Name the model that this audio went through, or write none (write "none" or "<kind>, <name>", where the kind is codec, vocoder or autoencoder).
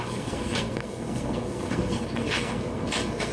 codec, SNAC